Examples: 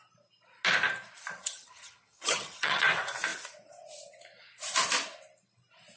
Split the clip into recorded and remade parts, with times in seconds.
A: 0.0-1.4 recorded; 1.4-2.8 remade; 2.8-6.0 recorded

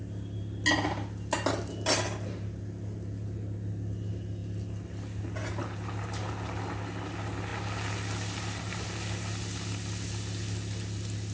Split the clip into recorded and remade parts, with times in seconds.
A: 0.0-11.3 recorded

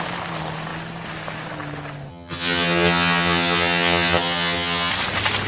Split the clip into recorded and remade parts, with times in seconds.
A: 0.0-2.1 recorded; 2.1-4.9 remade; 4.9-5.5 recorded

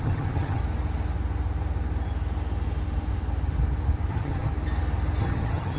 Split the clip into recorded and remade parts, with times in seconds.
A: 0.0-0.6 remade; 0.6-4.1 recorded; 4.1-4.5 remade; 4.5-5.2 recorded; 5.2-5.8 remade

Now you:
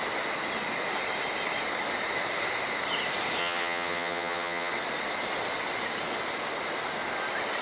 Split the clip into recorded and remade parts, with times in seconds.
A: 0.0-3.4 recorded; 3.4-4.7 remade; 4.7-7.6 recorded